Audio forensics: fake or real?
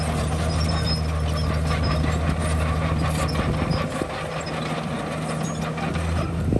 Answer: real